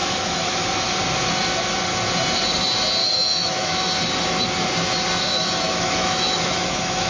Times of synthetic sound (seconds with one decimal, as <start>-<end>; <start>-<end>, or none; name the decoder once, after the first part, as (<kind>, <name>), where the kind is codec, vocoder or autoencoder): 0.0-0.7 (autoencoder, DAC-VAE); 3.0-3.9; 5.3-7.1